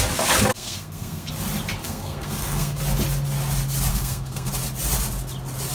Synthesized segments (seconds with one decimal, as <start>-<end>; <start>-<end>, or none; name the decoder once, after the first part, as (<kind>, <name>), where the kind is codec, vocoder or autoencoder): 0.5-1.3 (codec, SNAC); 1.8-2.8; 3.9-4.5